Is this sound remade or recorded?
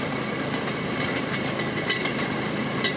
recorded